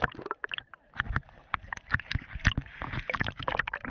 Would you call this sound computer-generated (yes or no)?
no